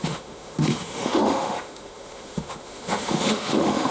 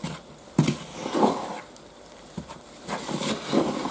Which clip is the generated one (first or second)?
first